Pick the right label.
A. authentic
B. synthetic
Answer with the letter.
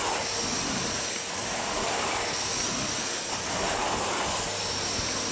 A